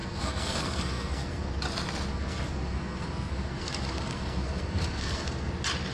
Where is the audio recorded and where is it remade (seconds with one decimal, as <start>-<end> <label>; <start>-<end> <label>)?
0.0-1.5 remade; 1.5-2.1 recorded; 2.1-5.5 remade; 5.5-5.9 recorded